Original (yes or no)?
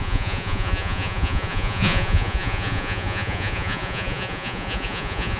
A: no